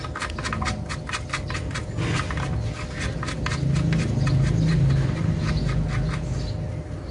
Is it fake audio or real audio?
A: real